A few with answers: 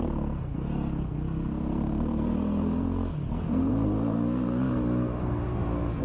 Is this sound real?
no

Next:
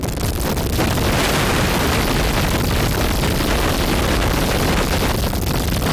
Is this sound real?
yes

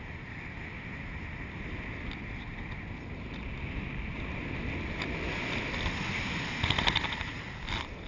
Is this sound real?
yes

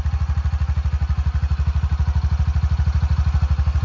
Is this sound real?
yes